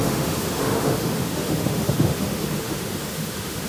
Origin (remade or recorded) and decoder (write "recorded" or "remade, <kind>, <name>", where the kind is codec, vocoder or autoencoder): remade, autoencoder, DAC-VAE